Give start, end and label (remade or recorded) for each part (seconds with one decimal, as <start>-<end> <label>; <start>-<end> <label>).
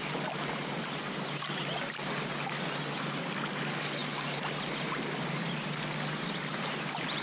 0.0-7.2 recorded